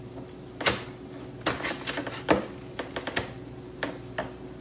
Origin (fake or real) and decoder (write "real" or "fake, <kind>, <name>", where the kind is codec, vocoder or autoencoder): real